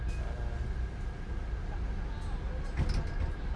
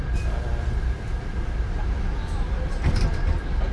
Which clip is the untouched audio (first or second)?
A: first